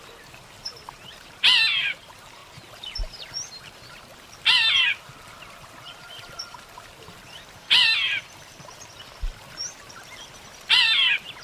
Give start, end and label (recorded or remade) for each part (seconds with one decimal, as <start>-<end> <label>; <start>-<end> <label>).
0.0-11.4 remade